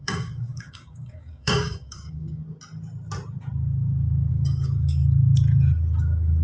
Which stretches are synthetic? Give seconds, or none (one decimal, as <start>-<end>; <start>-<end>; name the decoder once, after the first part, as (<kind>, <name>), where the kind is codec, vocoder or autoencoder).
0.0-2.4 (codec, DAC); 4.3-5.0; 6.0-6.4